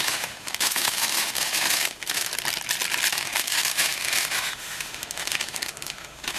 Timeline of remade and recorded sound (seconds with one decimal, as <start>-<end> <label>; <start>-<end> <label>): 0.0-2.3 remade; 2.3-3.1 recorded; 3.1-6.4 remade